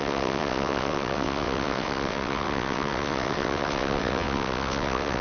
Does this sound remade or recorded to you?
remade